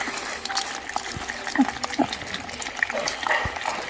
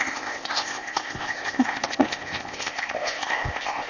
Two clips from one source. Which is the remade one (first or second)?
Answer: second